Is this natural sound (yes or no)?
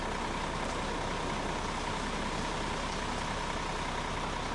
yes